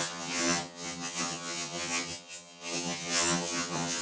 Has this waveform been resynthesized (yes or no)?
yes